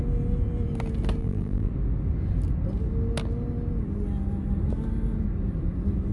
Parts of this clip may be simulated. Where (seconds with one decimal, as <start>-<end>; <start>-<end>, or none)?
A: 1.2-1.7